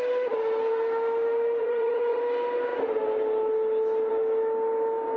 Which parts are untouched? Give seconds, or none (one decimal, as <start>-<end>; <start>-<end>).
0.0-1.6; 2.2-5.2